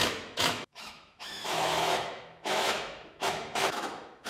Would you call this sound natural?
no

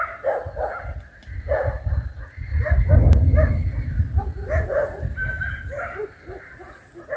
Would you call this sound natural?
yes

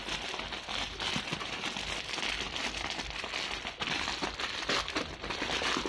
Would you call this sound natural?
yes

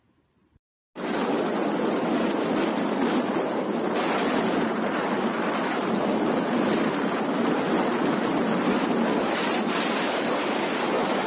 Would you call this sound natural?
yes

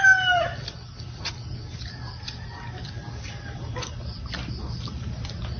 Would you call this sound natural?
yes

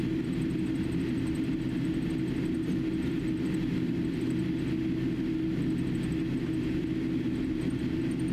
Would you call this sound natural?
yes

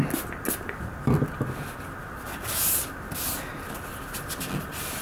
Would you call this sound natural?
yes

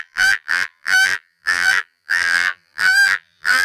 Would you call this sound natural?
no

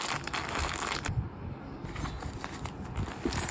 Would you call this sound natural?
yes